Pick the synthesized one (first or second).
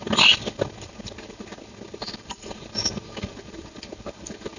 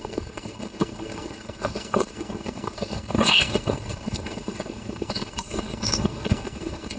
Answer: second